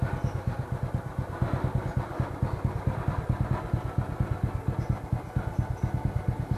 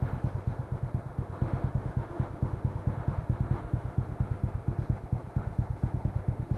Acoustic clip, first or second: first